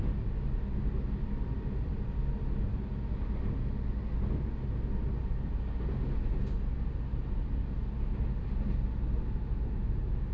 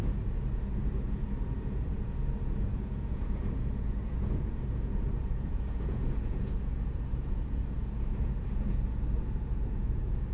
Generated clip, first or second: second